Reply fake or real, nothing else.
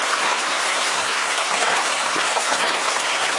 fake